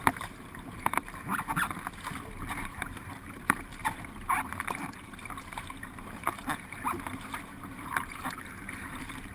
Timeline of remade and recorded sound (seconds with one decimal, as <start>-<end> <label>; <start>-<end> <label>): 0.0-1.3 remade; 1.3-2.4 recorded; 2.4-3.8 remade; 3.8-5.4 recorded; 5.4-9.3 remade